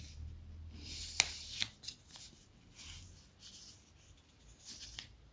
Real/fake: real